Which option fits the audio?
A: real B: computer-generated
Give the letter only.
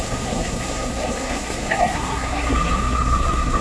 B